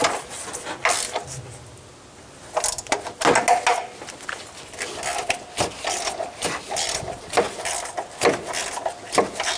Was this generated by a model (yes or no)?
no